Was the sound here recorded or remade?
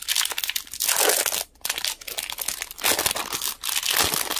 recorded